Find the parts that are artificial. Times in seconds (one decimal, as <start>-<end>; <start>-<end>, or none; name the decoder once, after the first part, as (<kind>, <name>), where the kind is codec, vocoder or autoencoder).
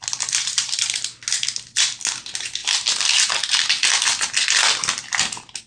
none